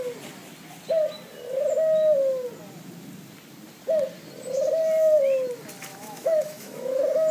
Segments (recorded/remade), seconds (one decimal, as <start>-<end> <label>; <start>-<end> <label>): 0.0-5.9 recorded; 5.9-7.3 remade